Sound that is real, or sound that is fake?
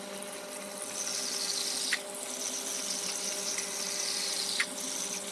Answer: real